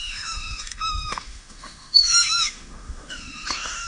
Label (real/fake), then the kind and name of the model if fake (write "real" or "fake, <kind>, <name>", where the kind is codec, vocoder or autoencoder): fake, autoencoder, DAC-VAE